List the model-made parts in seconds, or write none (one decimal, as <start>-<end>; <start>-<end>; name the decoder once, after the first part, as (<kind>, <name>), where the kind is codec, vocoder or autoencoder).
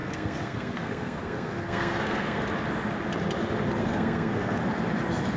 0.0-2.4 (codec, SNAC); 3.8-4.6